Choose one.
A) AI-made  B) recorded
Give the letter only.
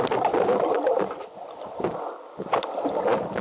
B